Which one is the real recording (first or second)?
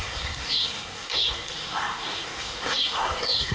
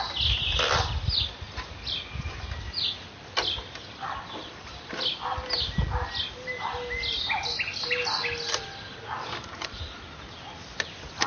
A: second